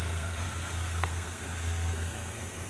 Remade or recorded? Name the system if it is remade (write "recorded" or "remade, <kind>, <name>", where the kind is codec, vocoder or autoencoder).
remade, codec, SNAC